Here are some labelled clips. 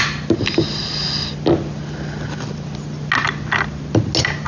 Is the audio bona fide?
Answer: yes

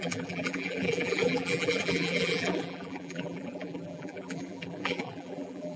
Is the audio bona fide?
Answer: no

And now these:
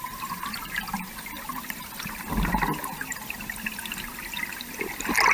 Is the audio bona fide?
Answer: yes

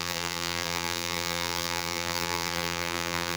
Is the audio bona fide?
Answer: no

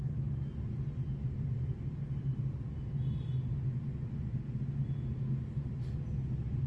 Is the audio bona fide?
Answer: yes